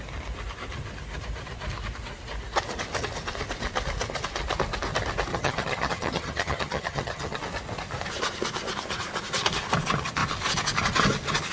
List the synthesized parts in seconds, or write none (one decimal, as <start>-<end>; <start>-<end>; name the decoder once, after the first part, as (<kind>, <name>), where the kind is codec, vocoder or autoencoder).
5.3-7.4 (vocoder, HiFi-GAN)